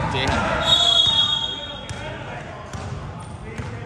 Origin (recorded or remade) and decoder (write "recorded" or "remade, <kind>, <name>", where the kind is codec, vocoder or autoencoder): recorded